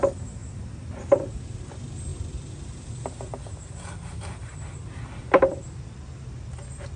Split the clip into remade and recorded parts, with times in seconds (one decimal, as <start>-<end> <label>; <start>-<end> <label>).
0.0-0.4 recorded; 0.4-1.6 remade; 1.6-2.1 recorded; 2.1-6.3 remade; 6.3-7.0 recorded